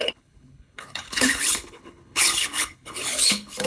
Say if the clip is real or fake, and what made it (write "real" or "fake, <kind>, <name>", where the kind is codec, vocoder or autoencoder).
fake, codec, HILCodec